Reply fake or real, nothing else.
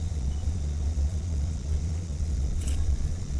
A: fake